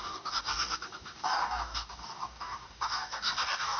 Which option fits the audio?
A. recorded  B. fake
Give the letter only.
B